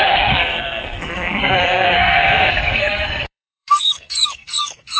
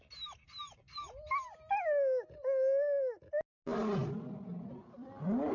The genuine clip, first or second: second